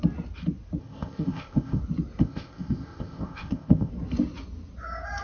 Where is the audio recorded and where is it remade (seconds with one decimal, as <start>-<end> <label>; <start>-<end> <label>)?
0.0-0.8 recorded; 0.8-1.8 remade; 1.8-2.2 recorded; 2.2-3.9 remade; 3.9-5.2 recorded